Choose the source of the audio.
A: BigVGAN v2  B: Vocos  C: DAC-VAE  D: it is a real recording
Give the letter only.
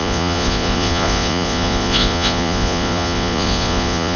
B